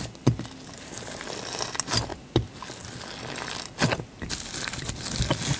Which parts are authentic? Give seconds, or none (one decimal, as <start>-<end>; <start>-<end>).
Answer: 0.0-5.6